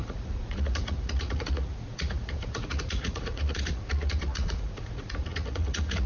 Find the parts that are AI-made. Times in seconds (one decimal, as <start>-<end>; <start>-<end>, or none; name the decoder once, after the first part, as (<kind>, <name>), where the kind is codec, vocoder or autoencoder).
0.0-6.1 (vocoder, Vocos)